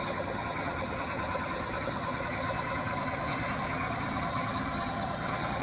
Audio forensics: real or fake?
fake